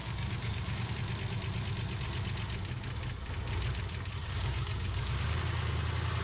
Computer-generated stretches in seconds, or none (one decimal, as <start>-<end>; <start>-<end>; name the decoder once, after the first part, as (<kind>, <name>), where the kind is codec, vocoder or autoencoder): 0.0-0.9 (codec, DAC); 4.2-5.4